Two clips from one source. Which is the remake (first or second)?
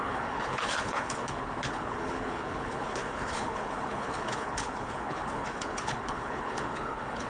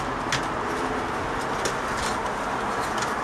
first